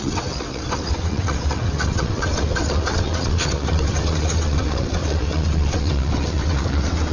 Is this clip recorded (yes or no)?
no